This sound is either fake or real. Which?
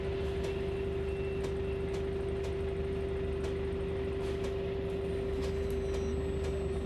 real